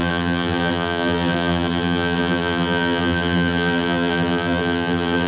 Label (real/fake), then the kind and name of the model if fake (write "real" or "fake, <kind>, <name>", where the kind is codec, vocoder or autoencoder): fake, vocoder, BigVGAN v2